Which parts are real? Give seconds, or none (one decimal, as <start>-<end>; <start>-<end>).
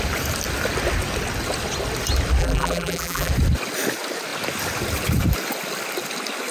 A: 0.0-2.4; 3.3-6.5